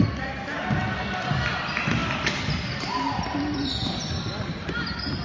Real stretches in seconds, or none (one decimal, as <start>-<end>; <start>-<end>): 0.0-2.0; 2.9-3.3; 4.7-5.2